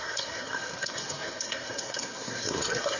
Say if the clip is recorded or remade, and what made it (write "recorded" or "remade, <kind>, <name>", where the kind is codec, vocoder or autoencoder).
remade, codec, SNAC